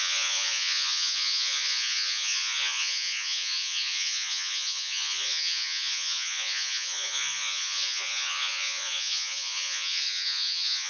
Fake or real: fake